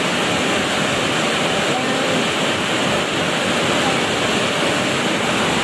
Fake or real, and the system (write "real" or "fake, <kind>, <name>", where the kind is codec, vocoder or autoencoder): real